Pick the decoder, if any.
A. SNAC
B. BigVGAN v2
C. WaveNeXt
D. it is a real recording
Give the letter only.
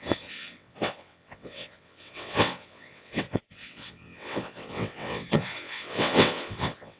C